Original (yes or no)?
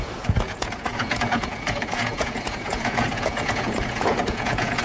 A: no